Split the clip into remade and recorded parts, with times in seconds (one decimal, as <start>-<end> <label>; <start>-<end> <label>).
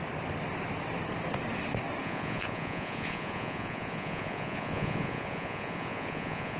0.0-2.0 recorded; 2.0-6.6 remade